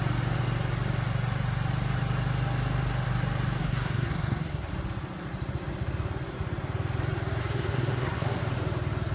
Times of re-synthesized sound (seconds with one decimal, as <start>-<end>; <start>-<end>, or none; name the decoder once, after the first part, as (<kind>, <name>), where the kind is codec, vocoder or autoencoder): 3.6-4.7 (codec, SNAC); 7.4-8.4